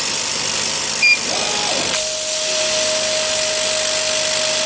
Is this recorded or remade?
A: recorded